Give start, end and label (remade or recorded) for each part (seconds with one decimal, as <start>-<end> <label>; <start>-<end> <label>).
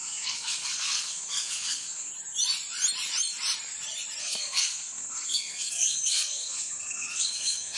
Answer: 0.0-2.1 remade; 2.1-4.2 recorded; 4.2-7.8 remade